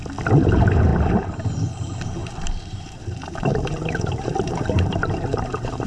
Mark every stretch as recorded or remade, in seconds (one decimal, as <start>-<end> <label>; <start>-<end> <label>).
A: 0.0-0.9 recorded; 0.9-1.4 remade; 1.4-2.2 recorded; 2.2-5.9 remade